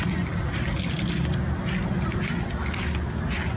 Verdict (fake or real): real